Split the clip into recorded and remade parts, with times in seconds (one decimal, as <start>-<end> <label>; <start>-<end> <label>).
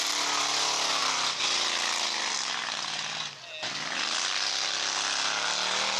0.0-6.0 recorded